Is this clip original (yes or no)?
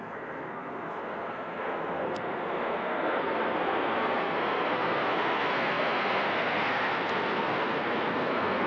no